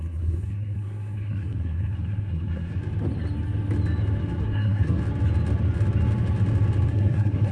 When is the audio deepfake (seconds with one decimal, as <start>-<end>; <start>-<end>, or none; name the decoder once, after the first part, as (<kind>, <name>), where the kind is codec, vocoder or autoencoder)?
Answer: 0.0-2.8 (codec, SNAC); 4.4-5.0; 6.9-7.5